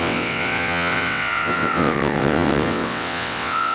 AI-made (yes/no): yes